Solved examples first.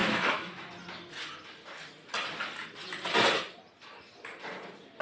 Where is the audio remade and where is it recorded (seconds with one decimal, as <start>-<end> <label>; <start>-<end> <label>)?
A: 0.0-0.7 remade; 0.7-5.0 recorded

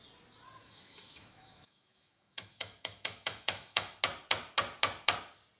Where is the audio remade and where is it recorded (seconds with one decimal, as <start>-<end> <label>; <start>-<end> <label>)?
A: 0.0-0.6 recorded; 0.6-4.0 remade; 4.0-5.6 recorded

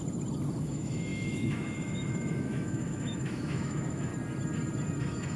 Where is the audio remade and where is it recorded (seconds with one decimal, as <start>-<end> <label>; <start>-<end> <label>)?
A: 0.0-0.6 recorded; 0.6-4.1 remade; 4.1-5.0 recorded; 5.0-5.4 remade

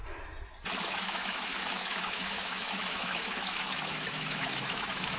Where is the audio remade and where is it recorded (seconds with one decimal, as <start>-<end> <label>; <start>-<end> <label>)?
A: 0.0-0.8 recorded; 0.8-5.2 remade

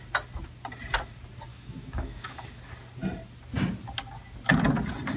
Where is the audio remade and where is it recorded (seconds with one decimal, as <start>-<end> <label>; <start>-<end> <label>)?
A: 0.0-1.5 recorded; 1.5-2.6 remade; 2.6-5.2 recorded